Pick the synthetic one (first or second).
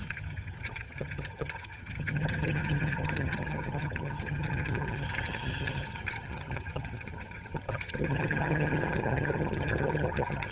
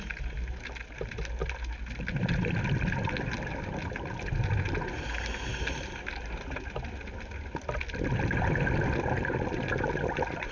first